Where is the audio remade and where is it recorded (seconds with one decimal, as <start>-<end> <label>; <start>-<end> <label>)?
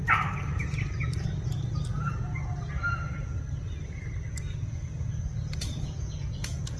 0.0-4.3 recorded; 4.3-6.8 remade